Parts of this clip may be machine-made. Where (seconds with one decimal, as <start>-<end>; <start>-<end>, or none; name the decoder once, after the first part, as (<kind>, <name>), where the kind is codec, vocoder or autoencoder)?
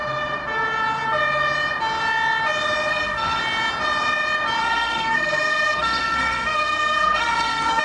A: 2.9-3.4 (codec, SNAC); 4.6-7.8